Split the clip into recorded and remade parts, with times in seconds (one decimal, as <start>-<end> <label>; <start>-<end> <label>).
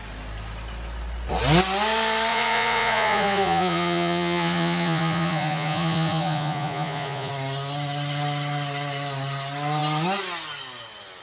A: 0.0-2.3 recorded; 2.3-7.3 remade; 7.3-11.2 recorded